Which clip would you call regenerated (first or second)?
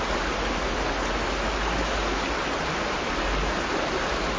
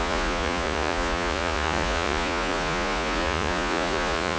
second